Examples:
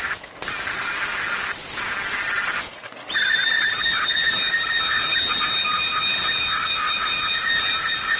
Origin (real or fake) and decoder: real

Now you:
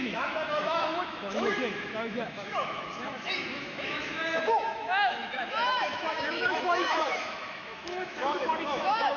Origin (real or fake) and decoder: fake, autoencoder, DAC-VAE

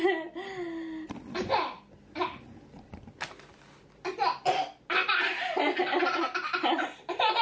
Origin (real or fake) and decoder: real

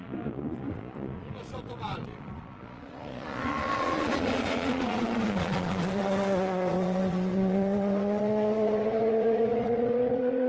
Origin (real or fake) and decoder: fake, vocoder, Vocos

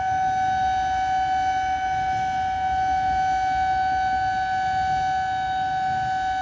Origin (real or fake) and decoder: real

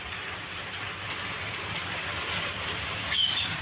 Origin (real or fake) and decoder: real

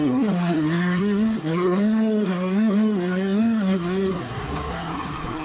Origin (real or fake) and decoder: fake, codec, SNAC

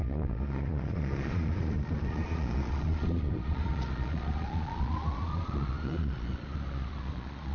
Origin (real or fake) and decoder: fake, vocoder, Vocos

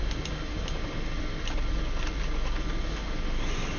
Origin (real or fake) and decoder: real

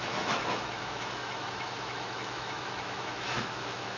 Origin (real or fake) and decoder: fake, autoencoder, DAC-VAE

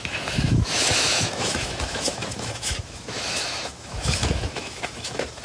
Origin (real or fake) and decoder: fake, autoencoder, DAC-VAE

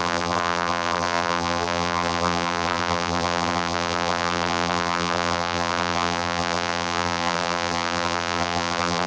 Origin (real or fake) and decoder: fake, vocoder, BigVGAN v2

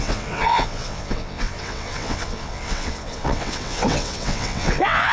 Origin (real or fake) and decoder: fake, vocoder, WaveNeXt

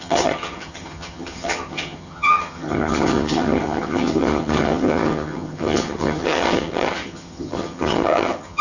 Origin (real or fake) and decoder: fake, vocoder, HiFi-GAN